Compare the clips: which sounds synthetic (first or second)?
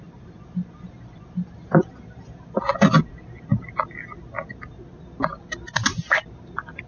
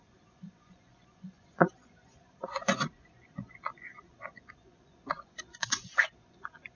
second